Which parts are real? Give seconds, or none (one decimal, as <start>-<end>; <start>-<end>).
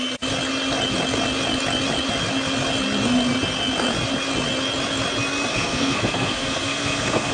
0.0-5.5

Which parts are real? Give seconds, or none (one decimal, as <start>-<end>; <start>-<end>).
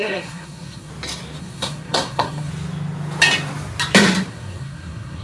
0.9-1.4; 2.5-4.3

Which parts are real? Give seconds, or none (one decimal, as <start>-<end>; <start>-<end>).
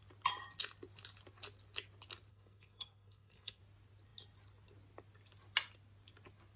0.0-2.3; 3.6-6.6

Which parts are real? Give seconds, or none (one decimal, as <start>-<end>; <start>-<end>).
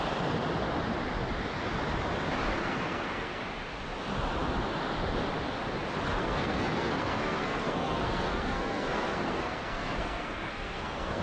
0.0-2.6; 3.4-6.2